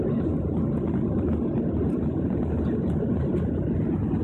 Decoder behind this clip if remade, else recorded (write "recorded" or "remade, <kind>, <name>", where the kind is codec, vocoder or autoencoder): recorded